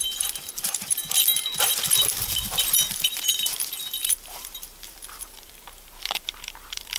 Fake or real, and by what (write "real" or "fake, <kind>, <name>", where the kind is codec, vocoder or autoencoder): fake, vocoder, BigVGAN v2